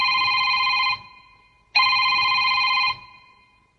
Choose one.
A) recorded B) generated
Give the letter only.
A